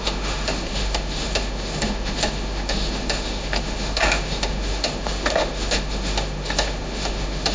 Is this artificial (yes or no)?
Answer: yes